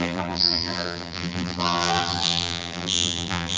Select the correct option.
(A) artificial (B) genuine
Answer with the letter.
A